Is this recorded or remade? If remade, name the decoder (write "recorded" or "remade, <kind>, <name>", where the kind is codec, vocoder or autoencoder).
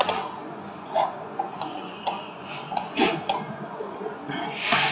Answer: remade, vocoder, Vocos